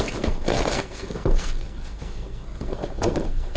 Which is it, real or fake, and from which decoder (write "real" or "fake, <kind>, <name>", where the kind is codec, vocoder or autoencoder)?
fake, codec, SNAC